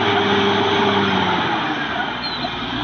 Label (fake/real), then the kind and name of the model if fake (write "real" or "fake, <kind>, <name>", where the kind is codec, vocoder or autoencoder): real